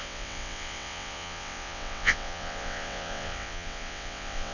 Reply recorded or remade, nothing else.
remade